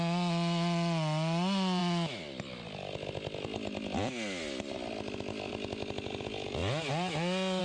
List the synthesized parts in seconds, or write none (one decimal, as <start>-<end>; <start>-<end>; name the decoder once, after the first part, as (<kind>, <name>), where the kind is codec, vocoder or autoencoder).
none